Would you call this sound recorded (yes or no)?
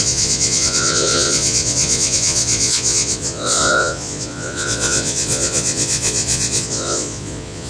no